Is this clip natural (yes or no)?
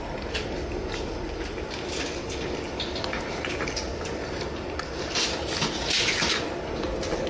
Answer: yes